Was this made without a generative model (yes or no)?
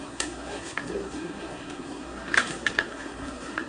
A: no